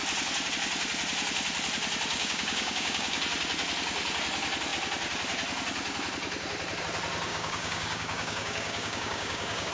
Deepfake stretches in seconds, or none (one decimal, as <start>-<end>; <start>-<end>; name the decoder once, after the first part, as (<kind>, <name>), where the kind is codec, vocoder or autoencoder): 2.1-3.2 (codec, DAC); 7.3-9.7